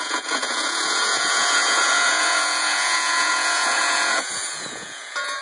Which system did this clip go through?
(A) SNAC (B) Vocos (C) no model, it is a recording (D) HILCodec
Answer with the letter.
B